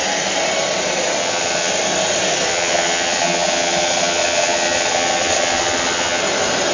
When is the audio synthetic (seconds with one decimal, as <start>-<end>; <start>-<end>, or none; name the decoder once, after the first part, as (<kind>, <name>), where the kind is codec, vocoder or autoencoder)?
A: 1.2-1.7 (vocoder, WaveNeXt); 2.5-6.2